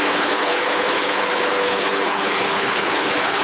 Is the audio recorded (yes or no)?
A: no